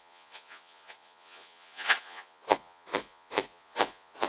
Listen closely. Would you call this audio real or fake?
fake